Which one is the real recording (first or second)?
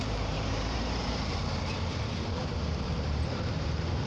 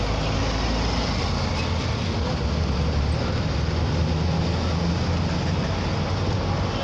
second